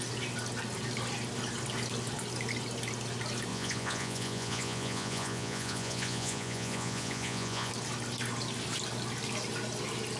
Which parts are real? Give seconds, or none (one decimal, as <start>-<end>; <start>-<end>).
0.0-3.5; 7.7-10.2